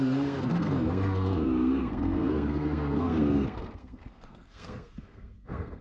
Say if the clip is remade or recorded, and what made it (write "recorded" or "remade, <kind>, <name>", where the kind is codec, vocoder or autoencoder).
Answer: remade, codec, SNAC